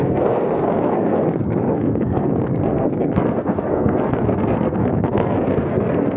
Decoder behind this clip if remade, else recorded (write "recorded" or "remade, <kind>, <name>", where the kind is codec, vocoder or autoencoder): remade, codec, SNAC